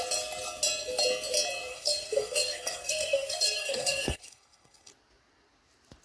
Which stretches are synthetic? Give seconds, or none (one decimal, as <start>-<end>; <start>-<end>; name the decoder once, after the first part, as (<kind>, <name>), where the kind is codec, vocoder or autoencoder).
1.7-4.9 (codec, SNAC)